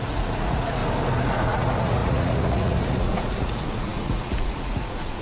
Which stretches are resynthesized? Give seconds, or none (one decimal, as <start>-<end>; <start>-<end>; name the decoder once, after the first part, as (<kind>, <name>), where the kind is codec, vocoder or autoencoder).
0.0-0.8 (vocoder, Vocos); 1.3-5.2